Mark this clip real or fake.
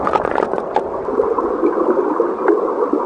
real